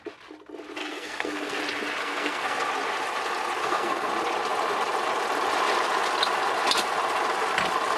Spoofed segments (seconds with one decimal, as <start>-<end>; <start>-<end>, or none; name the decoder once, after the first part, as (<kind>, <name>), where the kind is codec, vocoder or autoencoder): 0.8-1.6 (codec, SNAC); 2.0-2.7; 3.6-4.1